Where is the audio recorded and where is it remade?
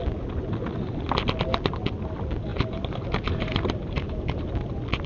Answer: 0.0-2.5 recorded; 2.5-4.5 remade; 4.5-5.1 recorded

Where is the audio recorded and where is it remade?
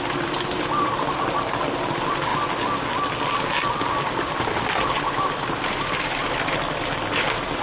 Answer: 0.0-2.3 remade; 2.3-5.9 recorded; 5.9-7.6 remade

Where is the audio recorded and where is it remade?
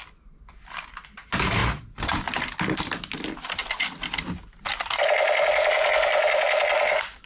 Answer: 0.0-1.6 recorded; 1.6-4.0 remade; 4.0-4.7 recorded; 4.7-6.6 remade; 6.6-7.3 recorded